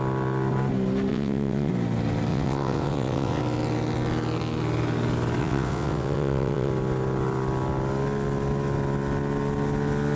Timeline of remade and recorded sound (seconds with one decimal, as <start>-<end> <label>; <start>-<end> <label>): 0.0-1.1 recorded; 1.1-1.7 remade; 1.7-2.3 recorded; 2.3-3.4 remade; 3.4-5.4 recorded; 5.4-6.7 remade; 6.7-10.2 recorded